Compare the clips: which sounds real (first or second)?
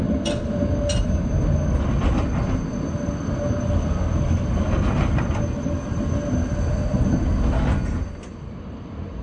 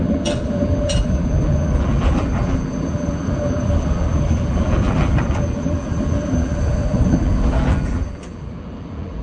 first